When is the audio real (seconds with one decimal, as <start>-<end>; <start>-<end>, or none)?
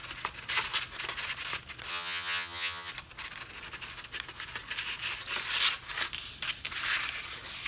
0.0-1.9; 2.9-7.7